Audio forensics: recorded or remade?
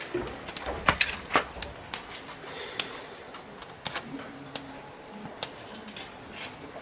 recorded